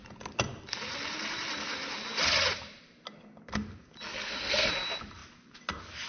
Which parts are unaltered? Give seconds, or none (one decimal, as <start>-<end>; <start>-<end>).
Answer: 0.0-4.1; 4.7-6.1